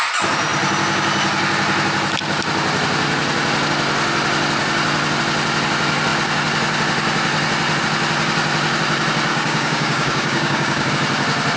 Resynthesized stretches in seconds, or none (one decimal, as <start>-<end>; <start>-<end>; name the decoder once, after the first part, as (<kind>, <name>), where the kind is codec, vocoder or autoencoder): 9.3-10.9 (codec, DAC)